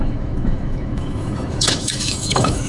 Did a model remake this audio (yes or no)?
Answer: yes